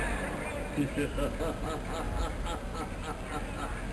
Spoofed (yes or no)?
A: no